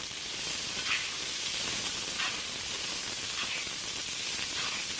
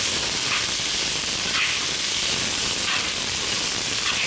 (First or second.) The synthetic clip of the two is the first